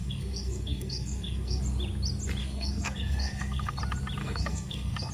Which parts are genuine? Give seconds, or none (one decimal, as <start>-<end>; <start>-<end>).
1.6-2.4; 3.8-4.2

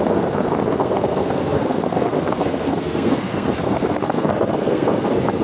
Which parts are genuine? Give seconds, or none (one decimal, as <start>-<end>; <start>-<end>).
none

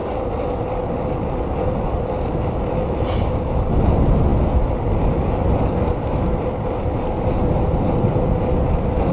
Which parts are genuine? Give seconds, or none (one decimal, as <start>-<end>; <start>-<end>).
0.0-9.1

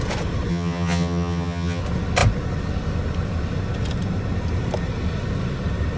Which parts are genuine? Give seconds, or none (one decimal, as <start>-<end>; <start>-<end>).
0.0-0.5; 1.8-6.0